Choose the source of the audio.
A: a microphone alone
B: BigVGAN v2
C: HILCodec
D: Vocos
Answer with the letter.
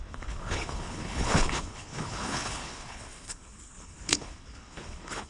C